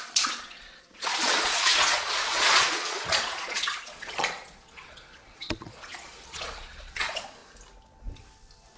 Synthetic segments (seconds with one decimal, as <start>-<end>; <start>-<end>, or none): 0.0-7.4